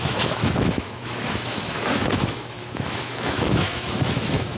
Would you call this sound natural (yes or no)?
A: no